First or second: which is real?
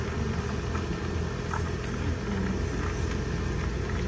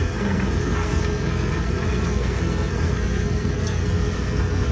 first